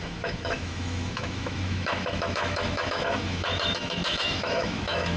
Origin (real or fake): fake